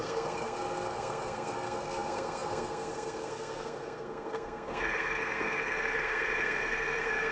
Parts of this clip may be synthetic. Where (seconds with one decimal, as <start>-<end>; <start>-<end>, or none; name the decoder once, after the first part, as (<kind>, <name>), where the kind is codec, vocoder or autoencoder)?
0.0-7.3 (codec, SNAC)